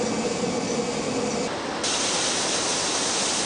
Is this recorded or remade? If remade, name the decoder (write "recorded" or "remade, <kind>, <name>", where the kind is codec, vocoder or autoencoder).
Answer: recorded